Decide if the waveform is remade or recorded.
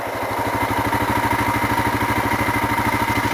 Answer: recorded